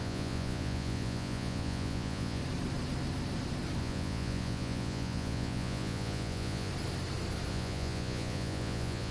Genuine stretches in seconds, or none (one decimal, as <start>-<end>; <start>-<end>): 2.4-3.8; 6.7-7.5